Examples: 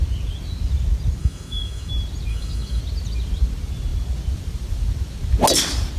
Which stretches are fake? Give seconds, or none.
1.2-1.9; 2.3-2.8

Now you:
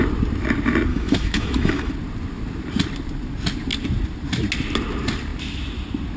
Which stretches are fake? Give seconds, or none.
0.9-1.9

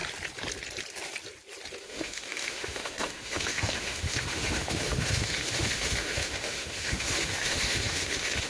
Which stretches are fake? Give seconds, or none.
1.8-8.5

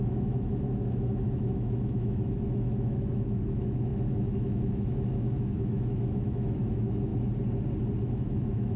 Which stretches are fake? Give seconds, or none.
0.0-7.1; 8.0-8.8

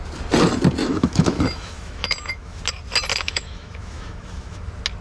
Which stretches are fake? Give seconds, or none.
0.8-2.6; 3.1-4.6

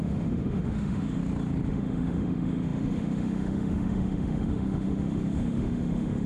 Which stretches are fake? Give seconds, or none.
0.0-1.2; 1.7-6.3

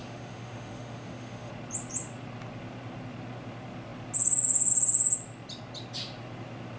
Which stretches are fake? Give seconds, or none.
0.0-1.5

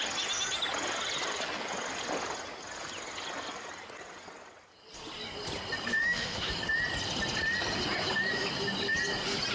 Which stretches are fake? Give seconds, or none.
6.0-6.5